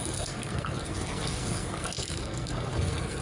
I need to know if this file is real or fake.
fake